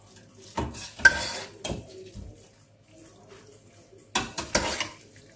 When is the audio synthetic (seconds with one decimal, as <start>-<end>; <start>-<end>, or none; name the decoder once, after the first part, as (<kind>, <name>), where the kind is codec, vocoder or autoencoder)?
none